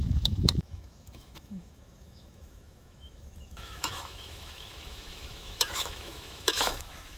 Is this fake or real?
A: fake